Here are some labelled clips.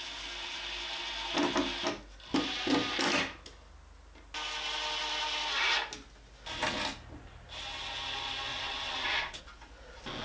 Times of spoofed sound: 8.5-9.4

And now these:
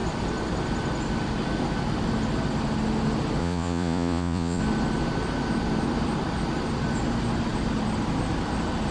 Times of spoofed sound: 3.4-4.6

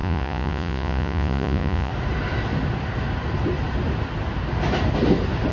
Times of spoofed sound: 0.0-1.9

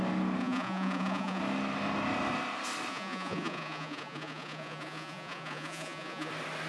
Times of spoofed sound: 0.4-1.4; 2.9-6.3